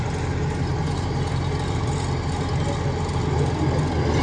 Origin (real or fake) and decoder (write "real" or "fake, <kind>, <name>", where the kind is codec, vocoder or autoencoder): real